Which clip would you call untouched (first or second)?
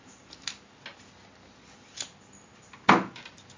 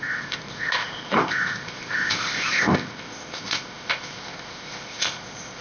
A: first